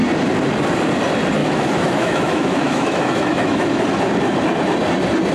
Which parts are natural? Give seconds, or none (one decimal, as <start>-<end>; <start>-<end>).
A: 0.0-1.4; 3.8-5.3